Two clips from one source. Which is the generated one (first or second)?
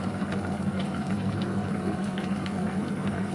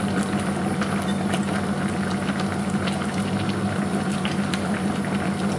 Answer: first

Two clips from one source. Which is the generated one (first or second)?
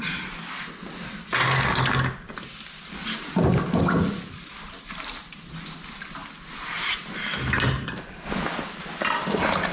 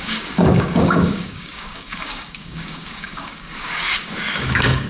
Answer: second